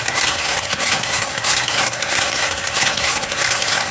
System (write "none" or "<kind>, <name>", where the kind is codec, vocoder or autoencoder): codec, SNAC